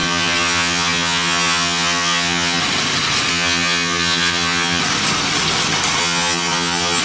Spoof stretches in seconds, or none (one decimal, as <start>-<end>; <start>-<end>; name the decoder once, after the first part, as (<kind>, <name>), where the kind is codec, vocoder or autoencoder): 0.0-2.6 (vocoder, HiFi-GAN); 3.3-4.8; 6.0-7.0